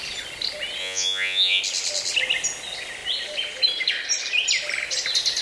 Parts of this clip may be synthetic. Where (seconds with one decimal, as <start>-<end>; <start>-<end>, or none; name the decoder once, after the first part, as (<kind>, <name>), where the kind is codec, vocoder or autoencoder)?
0.8-1.6 (vocoder, Vocos)